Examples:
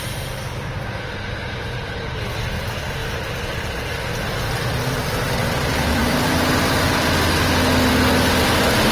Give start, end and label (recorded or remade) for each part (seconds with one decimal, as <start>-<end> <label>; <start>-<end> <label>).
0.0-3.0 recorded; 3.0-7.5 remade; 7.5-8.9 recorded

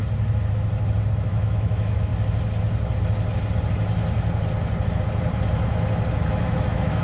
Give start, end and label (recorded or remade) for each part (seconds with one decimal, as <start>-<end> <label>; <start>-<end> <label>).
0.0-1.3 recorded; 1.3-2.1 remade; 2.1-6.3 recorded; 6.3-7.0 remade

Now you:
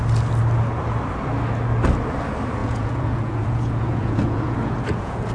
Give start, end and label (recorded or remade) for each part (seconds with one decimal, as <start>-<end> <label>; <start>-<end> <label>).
0.0-2.6 recorded; 2.6-5.3 remade

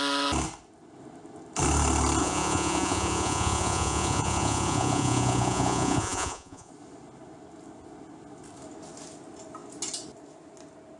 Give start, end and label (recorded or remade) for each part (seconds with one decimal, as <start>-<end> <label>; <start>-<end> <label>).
0.0-2.2 recorded; 2.2-6.7 remade; 6.7-11.0 recorded

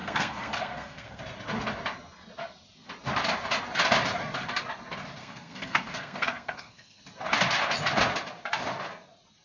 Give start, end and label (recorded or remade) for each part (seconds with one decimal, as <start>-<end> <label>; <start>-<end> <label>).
0.0-1.2 remade; 1.2-5.2 recorded; 5.2-7.0 remade; 7.0-9.4 recorded